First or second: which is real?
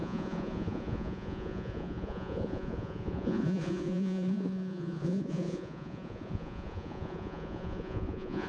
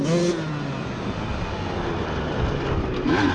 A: second